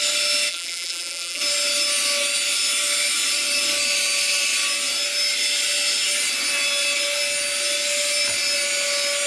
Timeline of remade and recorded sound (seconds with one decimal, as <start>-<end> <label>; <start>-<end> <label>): 0.0-0.5 recorded; 0.5-1.4 remade; 1.4-9.3 recorded